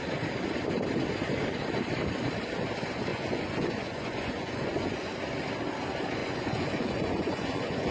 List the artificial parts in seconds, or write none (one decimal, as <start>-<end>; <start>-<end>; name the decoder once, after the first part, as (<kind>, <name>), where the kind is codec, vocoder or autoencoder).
3.1-5.1 (vocoder, Vocos); 6.2-7.9